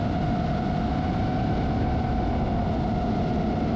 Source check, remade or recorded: recorded